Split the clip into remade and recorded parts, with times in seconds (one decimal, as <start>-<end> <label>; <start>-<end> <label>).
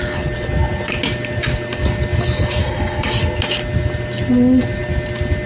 0.0-2.6 recorded; 2.6-3.2 remade; 3.2-5.5 recorded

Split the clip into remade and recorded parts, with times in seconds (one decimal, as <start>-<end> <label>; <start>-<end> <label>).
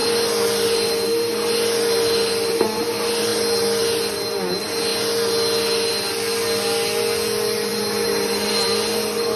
0.0-9.4 recorded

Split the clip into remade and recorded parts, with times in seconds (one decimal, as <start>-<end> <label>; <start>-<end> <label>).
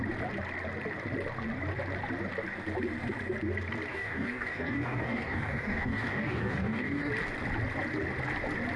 0.0-3.9 recorded; 3.9-7.1 remade; 7.1-8.8 recorded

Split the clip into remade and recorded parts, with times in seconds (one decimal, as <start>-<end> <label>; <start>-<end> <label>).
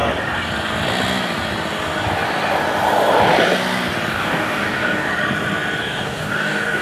0.0-4.1 recorded; 4.1-5.1 remade; 5.1-5.8 recorded; 5.8-6.8 remade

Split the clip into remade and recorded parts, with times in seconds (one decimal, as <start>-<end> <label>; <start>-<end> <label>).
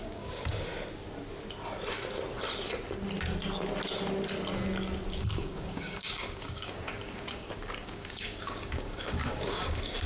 0.0-0.7 remade; 0.7-5.1 recorded; 5.1-10.1 remade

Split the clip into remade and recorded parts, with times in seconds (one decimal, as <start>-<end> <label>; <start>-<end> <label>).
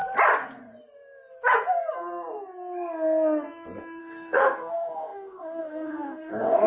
0.0-4.0 recorded; 4.0-6.7 remade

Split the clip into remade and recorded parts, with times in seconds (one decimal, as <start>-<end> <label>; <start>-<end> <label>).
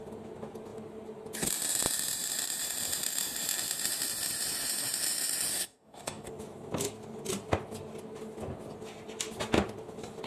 0.0-5.5 recorded; 5.5-6.3 remade; 6.3-10.3 recorded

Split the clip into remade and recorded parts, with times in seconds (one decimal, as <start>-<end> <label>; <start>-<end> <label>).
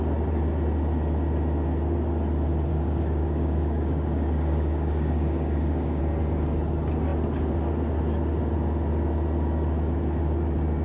0.0-2.7 recorded; 2.7-6.0 remade; 6.0-10.8 recorded